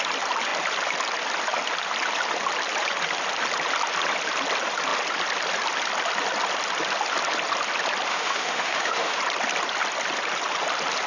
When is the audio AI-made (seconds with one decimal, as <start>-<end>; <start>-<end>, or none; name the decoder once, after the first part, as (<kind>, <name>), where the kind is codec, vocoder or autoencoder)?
8.1-9.2 (autoencoder, DAC-VAE)